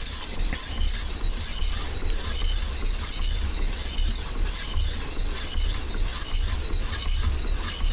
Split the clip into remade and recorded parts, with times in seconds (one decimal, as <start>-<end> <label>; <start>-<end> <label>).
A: 0.0-7.9 recorded

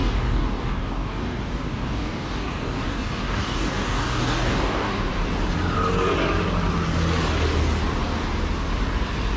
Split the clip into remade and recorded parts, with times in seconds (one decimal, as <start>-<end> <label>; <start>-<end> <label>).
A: 0.0-5.1 remade; 5.1-9.4 recorded

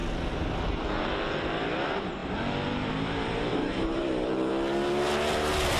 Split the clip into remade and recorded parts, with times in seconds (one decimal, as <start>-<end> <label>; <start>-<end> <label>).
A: 0.0-3.5 recorded; 3.5-4.5 remade; 4.5-5.8 recorded

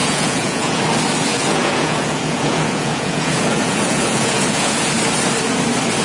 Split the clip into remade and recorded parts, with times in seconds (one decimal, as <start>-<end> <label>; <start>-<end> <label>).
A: 0.0-0.8 remade; 0.8-1.3 recorded; 1.3-4.9 remade; 4.9-6.0 recorded

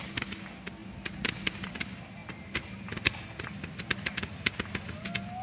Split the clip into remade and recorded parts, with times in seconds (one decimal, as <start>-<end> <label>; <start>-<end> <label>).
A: 0.0-5.4 recorded